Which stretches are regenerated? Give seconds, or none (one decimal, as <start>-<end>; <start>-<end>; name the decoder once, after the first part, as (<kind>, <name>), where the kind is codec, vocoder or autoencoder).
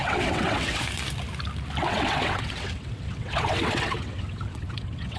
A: 0.0-0.8 (vocoder, WaveNeXt); 1.8-5.2